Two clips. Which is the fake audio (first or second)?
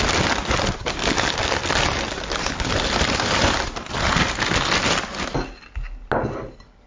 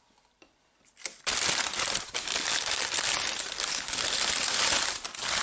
second